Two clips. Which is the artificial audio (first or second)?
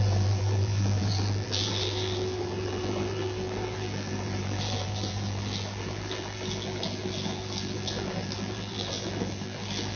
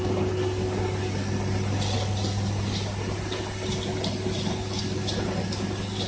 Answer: first